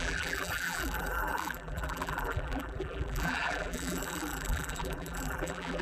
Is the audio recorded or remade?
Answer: remade